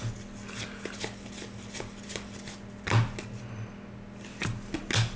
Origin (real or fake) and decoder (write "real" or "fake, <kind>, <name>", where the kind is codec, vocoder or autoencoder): real